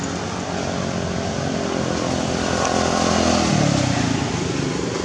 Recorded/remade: recorded